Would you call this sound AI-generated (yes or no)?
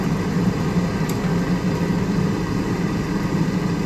no